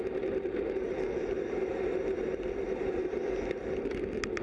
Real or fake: real